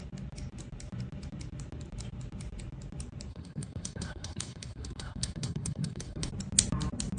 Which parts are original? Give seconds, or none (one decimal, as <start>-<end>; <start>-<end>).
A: 0.0-3.3; 6.3-7.2